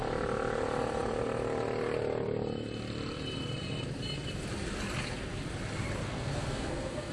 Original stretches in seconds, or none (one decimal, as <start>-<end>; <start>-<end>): 0.0-6.0